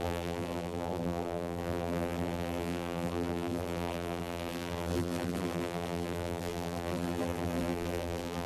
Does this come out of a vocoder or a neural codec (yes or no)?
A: yes